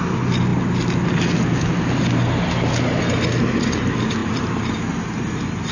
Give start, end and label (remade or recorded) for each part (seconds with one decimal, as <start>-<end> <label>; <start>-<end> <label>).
0.0-4.2 recorded; 4.2-4.7 remade; 4.7-5.7 recorded